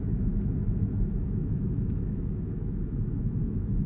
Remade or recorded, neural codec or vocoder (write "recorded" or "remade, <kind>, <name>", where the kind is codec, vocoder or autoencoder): remade, autoencoder, DAC-VAE